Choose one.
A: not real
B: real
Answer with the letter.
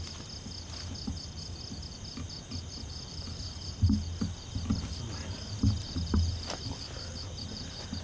B